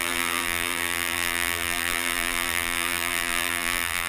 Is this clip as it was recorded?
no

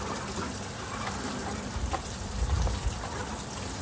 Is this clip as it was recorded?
yes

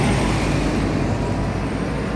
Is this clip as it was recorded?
yes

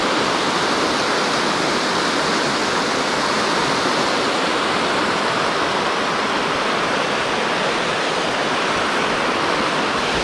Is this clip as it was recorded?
yes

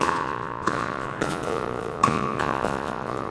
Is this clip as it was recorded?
no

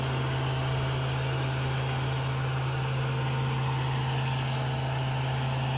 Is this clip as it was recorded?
yes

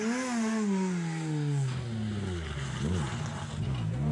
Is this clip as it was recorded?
yes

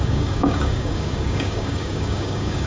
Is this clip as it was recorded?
no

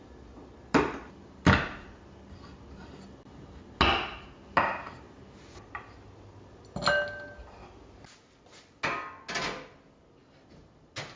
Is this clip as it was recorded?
yes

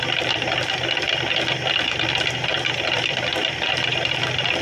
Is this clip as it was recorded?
no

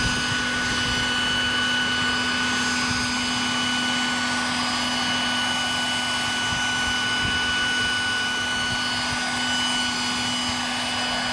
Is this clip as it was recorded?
yes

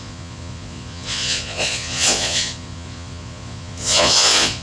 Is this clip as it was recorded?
no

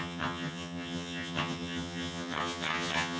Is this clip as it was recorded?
no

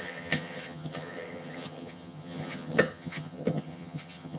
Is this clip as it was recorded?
no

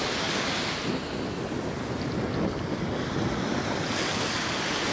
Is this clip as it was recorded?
yes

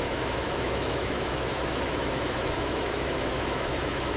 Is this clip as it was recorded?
no